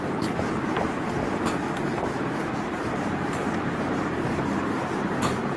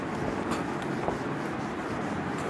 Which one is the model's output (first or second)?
first